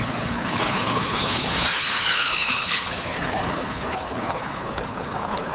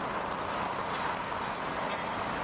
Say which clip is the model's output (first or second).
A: first